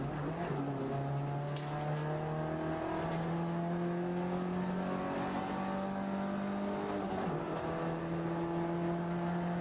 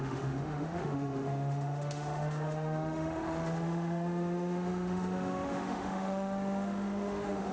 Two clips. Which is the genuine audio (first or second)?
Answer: first